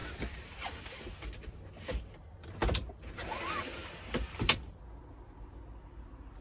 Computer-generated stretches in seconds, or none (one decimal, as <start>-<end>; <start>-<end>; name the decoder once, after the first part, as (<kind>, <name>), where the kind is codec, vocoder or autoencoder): none